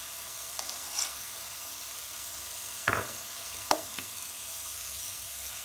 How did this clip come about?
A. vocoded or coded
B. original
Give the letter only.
A